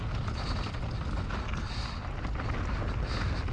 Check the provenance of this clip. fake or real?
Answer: real